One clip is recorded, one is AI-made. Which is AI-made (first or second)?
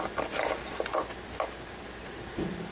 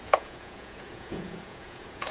second